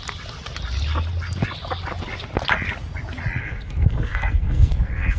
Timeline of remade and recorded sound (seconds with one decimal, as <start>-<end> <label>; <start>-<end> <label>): 0.0-3.4 recorded; 3.4-5.2 remade